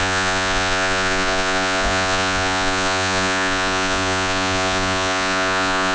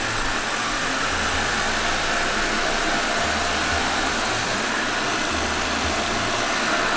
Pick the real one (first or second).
second